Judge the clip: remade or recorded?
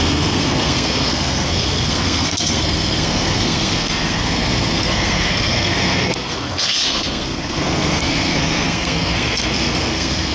remade